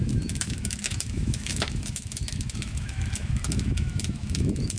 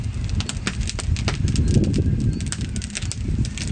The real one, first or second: second